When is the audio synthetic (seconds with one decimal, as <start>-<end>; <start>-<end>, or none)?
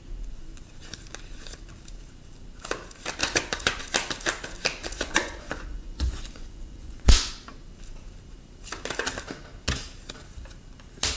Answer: 3.2-3.8; 4.8-7.3